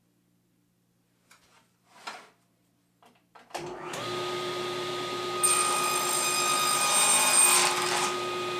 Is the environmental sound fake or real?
real